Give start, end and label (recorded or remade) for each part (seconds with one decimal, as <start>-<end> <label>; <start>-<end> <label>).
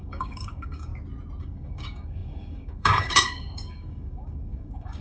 0.0-0.9 remade; 0.9-1.4 recorded; 1.4-5.0 remade